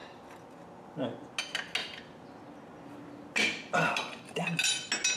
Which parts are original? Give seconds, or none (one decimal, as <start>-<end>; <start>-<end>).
0.0-5.2